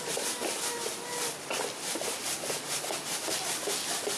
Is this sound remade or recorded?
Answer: recorded